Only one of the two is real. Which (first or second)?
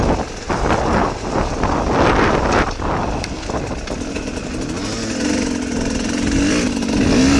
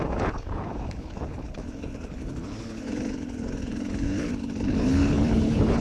first